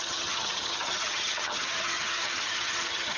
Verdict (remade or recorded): remade